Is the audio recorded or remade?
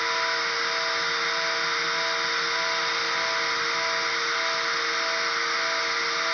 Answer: recorded